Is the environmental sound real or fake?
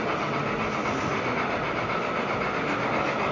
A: real